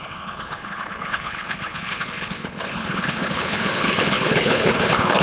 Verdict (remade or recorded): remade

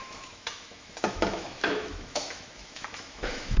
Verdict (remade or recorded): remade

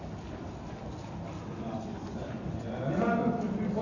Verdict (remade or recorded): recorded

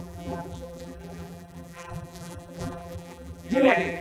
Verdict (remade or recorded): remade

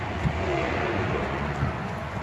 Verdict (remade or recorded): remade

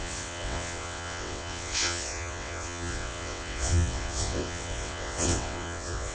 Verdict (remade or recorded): remade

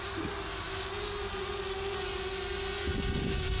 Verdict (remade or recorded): recorded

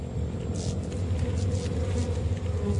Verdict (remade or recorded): recorded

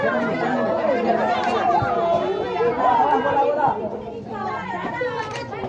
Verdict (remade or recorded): recorded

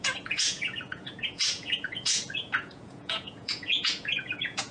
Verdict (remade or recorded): remade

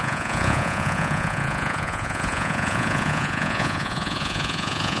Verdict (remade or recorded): remade